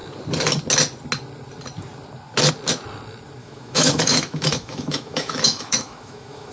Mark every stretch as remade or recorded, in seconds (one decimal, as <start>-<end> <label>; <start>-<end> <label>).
0.0-3.4 recorded; 3.4-6.5 remade